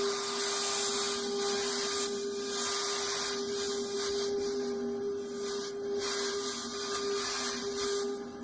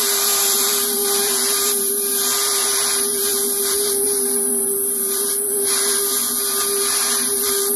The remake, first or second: second